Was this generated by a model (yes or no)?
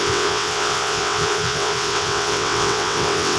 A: yes